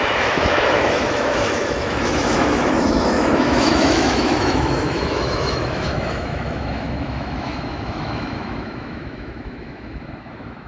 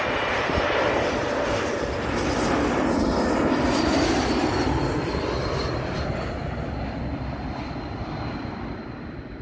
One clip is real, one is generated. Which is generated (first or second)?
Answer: first